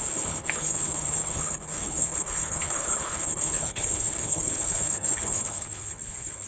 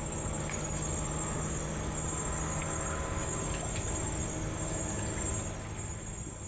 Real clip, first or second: second